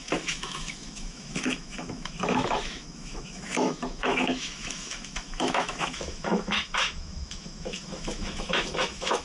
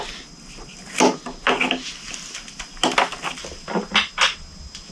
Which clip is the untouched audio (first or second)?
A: second